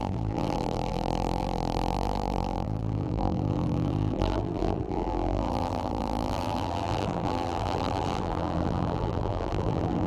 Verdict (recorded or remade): remade